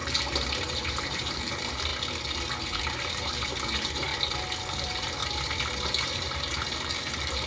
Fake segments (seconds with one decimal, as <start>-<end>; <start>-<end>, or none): 0.0-1.9; 2.8-4.1; 4.8-5.2; 5.9-7.5